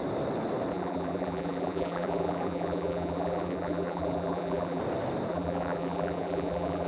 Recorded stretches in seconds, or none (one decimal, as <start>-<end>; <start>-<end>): 0.0-0.7; 4.8-5.3